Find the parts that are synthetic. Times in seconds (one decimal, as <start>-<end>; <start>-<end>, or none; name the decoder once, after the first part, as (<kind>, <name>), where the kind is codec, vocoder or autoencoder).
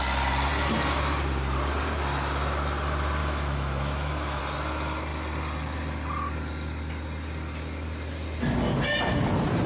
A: 3.2-4.4 (autoencoder, DAC-VAE)